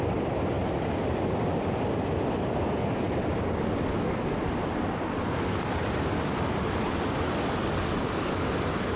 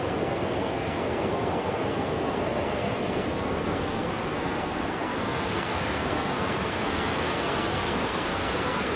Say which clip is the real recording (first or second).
first